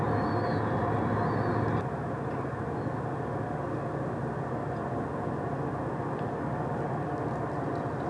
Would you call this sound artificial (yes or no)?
no